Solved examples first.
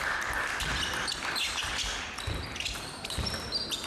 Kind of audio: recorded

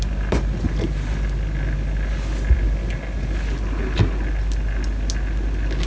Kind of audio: recorded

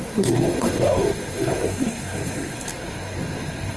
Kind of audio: remade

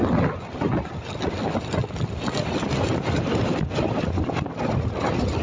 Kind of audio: recorded